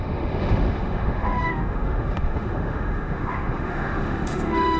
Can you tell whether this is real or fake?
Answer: fake